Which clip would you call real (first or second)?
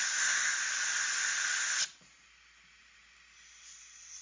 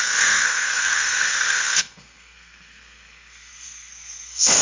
first